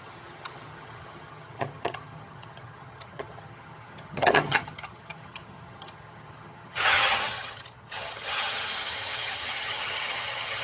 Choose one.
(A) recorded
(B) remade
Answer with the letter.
B